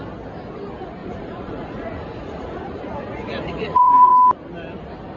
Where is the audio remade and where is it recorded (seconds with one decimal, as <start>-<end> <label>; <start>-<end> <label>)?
0.0-1.0 recorded; 1.0-4.1 remade; 4.1-5.2 recorded